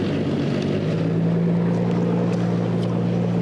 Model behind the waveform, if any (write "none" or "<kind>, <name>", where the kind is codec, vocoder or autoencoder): none